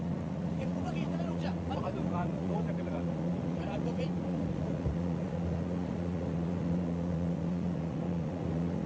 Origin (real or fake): fake